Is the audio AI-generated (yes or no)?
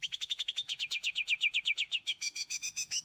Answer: yes